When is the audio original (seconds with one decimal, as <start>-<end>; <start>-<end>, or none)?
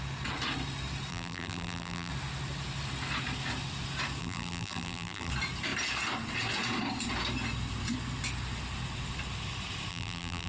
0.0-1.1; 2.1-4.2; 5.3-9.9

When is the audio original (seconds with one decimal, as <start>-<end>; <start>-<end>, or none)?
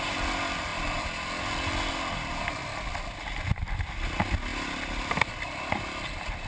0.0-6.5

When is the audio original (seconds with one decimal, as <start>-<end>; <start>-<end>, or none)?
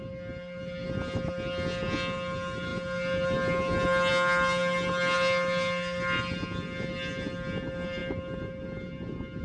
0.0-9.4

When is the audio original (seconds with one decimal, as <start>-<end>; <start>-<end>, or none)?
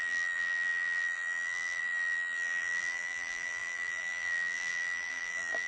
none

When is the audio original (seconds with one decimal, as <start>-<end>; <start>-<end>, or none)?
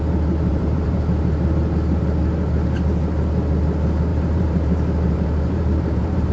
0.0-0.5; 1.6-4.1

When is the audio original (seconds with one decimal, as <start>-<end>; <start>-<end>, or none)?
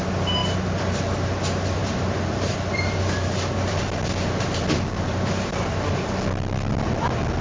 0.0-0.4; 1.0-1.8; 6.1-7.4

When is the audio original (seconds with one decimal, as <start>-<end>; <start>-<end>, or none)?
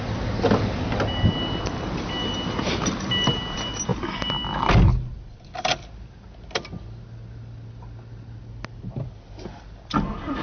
0.0-10.4